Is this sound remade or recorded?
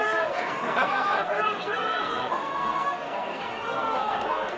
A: remade